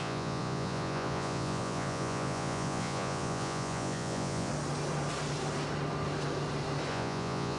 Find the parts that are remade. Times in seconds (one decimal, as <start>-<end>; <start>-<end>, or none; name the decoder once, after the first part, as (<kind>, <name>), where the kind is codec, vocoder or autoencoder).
0.0-4.5 (vocoder, Vocos); 6.9-7.6